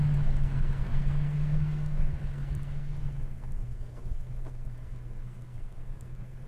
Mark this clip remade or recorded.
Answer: remade